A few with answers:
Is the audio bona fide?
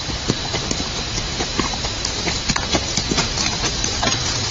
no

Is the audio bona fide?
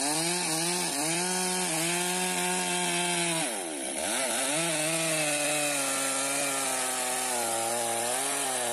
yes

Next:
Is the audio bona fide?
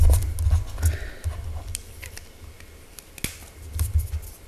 yes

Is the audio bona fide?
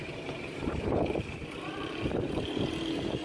no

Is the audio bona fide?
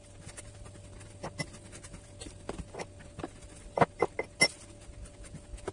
yes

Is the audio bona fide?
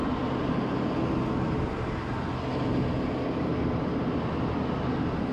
yes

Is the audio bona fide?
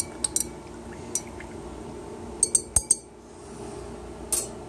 yes